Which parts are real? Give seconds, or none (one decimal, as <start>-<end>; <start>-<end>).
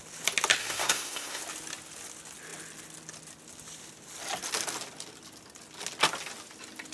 0.0-0.6; 1.4-6.9